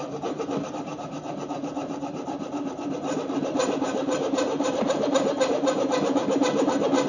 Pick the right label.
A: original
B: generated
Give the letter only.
B